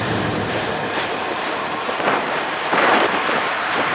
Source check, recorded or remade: remade